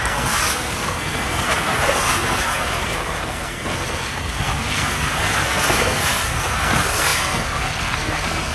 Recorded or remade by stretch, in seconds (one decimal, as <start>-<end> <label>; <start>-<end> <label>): 0.0-8.5 remade